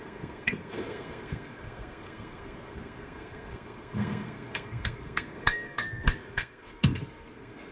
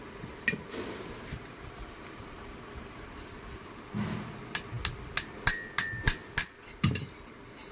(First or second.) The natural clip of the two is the second